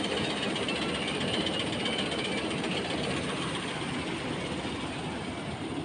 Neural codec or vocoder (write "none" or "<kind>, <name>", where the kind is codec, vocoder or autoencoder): none